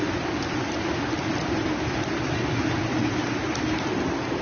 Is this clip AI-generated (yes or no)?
no